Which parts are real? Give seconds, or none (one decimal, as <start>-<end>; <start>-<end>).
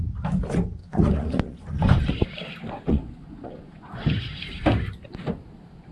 0.0-0.8; 2.1-2.9; 4.0-5.9